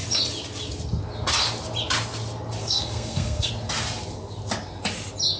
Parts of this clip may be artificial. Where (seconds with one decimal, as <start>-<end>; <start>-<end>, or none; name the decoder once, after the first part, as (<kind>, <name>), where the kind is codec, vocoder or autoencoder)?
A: 2.6-3.5 (codec, SNAC)